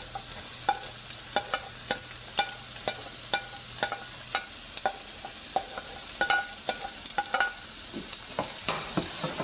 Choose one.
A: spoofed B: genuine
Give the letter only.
B